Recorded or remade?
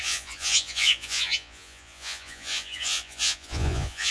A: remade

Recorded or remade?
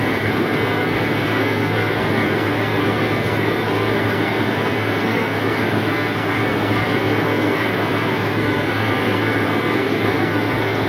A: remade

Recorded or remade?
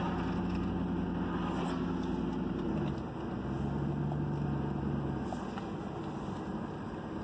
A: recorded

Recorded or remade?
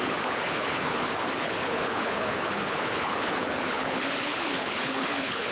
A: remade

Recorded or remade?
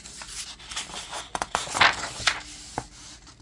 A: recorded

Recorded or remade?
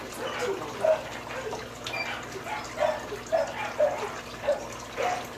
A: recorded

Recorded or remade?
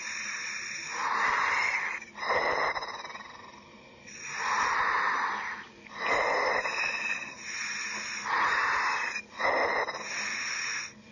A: recorded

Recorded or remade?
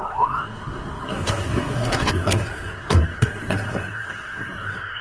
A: remade